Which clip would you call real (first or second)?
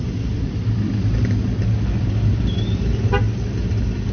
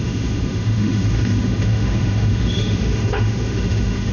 first